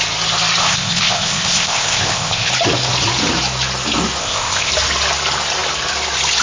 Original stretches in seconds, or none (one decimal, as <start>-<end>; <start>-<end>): 0.0-0.6; 2.5-4.2; 4.7-6.4